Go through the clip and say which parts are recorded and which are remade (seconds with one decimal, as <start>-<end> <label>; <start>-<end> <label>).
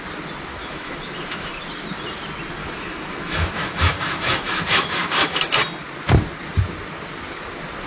0.0-0.5 recorded; 0.5-1.6 remade; 1.6-2.6 recorded; 2.6-5.4 remade; 5.4-7.9 recorded